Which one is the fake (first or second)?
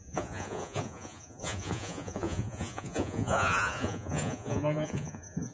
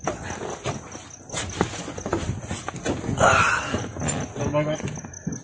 first